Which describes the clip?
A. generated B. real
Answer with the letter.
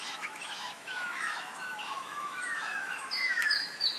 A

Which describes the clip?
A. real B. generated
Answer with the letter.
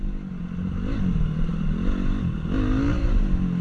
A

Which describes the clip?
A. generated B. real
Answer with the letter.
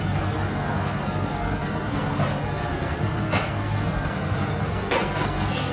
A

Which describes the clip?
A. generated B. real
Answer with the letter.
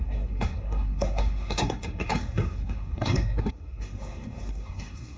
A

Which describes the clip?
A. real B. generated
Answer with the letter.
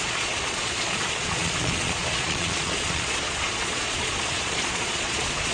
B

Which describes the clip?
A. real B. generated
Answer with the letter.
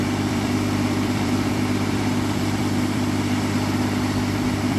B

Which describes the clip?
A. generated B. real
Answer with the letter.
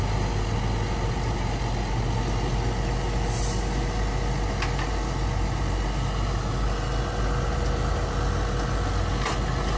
B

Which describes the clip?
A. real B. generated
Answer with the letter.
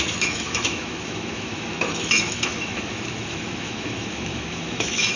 B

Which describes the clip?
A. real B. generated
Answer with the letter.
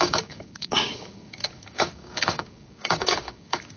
B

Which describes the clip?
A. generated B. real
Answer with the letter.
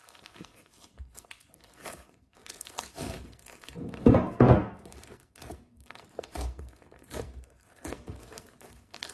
A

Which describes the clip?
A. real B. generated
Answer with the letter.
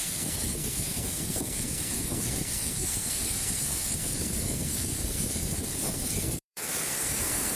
B